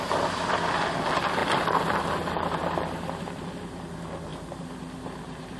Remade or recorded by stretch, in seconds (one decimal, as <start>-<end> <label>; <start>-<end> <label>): 0.0-1.4 recorded; 1.4-3.4 remade; 3.4-4.3 recorded; 4.3-5.6 remade